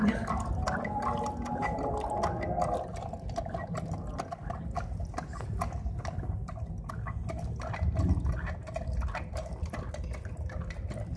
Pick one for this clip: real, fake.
real